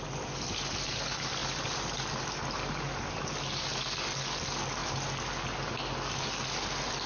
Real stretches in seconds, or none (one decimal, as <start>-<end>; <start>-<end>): 0.0-7.1